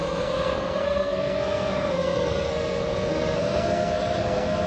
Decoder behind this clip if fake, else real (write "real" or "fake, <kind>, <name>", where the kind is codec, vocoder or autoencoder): fake, codec, SNAC